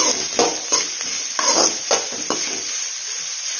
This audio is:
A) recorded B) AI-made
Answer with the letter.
A